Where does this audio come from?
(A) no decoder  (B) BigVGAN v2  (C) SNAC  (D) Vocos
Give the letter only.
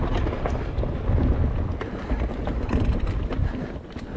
A